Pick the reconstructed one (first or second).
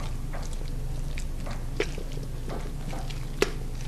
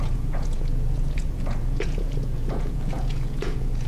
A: second